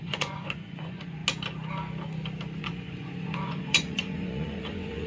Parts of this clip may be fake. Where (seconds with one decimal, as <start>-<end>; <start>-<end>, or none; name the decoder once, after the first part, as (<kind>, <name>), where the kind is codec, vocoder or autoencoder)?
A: 0.0-1.2 (vocoder, Vocos); 2.6-5.1